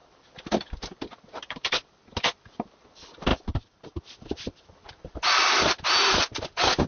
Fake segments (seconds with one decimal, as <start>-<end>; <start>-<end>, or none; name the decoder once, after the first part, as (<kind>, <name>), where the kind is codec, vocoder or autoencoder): 3.3-4.0 (vocoder, BigVGAN v2)